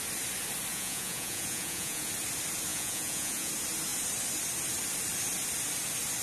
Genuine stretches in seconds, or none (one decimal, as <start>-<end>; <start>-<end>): 0.0-0.7; 2.1-2.7; 3.5-6.2

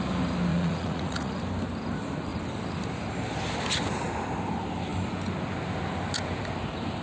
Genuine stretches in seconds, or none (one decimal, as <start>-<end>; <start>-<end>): 0.0-0.5; 1.4-7.0

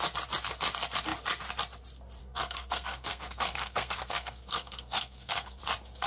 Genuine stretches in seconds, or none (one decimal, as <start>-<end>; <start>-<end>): 0.0-2.2; 5.6-6.1

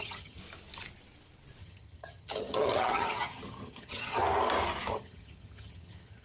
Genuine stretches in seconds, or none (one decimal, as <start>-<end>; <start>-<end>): 0.4-1.6; 4.2-4.9

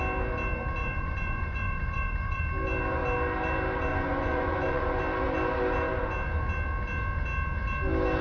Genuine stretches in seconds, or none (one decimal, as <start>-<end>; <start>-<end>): 0.0-0.8; 2.4-3.9; 5.0-8.2